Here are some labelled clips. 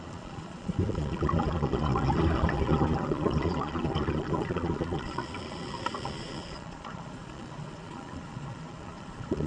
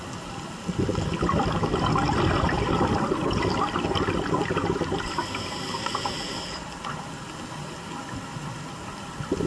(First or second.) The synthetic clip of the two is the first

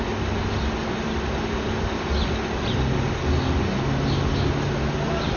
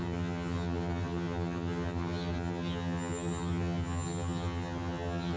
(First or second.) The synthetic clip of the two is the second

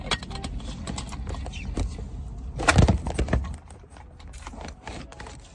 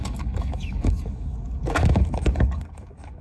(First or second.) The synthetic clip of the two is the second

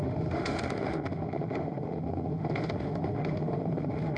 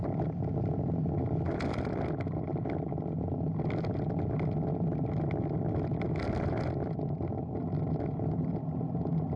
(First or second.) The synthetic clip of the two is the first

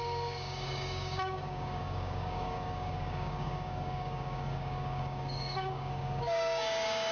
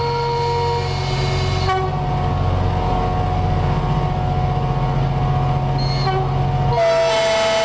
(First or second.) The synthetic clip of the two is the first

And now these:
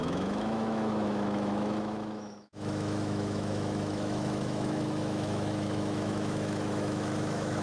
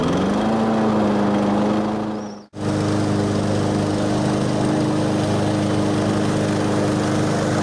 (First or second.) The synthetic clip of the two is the first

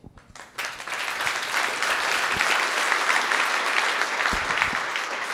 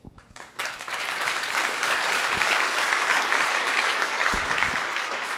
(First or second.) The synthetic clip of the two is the second